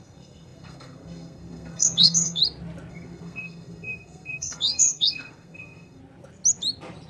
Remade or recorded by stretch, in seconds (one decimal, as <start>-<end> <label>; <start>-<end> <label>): 0.0-2.4 remade; 2.4-2.9 recorded; 2.9-6.0 remade; 6.0-7.1 recorded